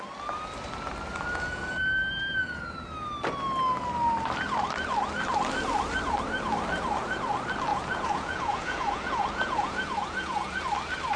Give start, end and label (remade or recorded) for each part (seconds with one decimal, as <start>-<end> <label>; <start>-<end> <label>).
0.0-7.7 recorded; 7.7-10.6 remade; 10.6-11.2 recorded